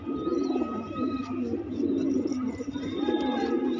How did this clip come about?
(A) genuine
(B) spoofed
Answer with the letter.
A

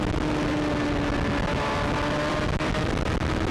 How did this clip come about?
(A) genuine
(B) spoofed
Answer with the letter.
A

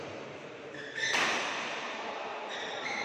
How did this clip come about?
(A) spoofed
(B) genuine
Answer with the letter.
A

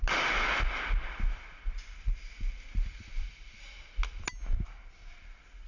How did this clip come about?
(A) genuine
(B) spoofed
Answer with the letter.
A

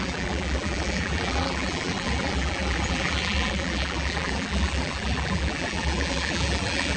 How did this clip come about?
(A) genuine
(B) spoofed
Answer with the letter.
B